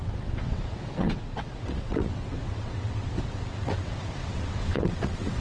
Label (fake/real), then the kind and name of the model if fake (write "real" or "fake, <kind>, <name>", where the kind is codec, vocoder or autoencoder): fake, vocoder, WaveNeXt